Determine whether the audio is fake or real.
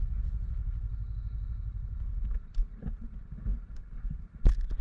fake